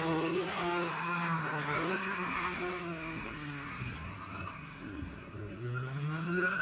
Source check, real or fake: fake